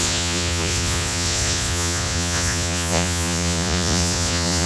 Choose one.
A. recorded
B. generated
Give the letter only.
B